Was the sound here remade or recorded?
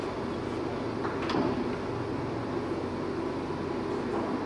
recorded